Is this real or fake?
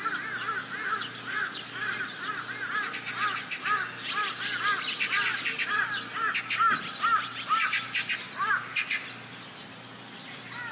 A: real